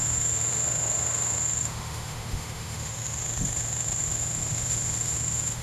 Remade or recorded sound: remade